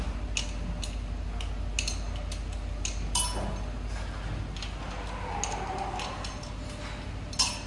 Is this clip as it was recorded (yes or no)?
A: yes